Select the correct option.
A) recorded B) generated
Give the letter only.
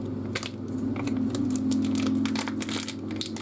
A